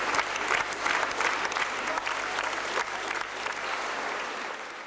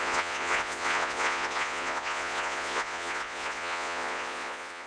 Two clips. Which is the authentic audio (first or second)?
first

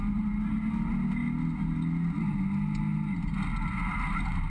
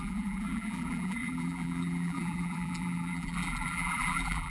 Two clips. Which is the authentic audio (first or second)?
first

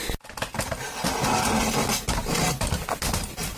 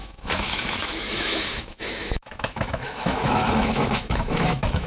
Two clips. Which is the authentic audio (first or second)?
first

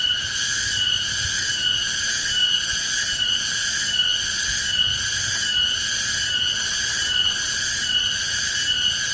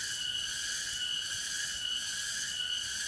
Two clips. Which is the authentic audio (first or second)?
first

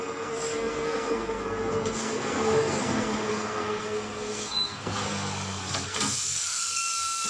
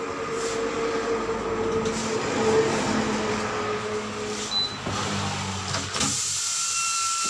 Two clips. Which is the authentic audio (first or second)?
second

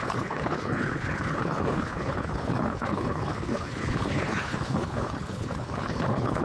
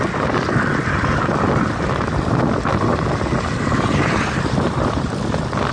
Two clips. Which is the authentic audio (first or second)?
second